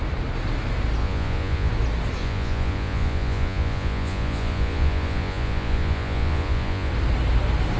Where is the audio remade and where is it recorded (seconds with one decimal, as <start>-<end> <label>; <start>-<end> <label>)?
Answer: 0.0-1.0 recorded; 1.0-1.7 remade; 1.7-2.2 recorded; 2.2-6.9 remade; 6.9-7.8 recorded